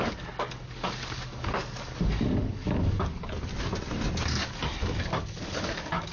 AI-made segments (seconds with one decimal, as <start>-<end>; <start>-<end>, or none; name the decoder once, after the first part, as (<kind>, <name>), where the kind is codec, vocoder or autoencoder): 0.0-3.5 (codec, DAC); 4.3-6.1